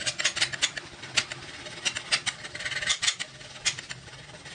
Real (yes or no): yes